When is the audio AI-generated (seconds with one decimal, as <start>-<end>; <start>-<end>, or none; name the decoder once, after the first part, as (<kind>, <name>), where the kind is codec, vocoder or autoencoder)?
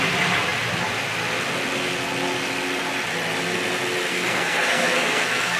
4.1-5.6 (codec, SNAC)